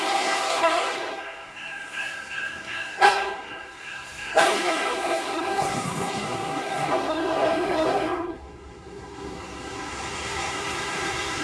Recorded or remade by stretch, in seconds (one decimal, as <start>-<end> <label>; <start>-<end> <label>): 0.0-11.4 remade